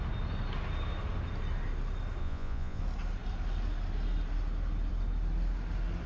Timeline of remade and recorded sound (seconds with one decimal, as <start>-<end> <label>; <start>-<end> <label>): 0.0-2.2 recorded; 2.2-2.8 remade; 2.8-6.1 recorded